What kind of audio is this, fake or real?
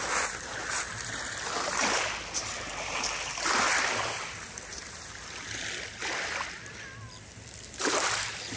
real